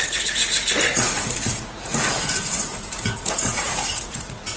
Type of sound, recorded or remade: remade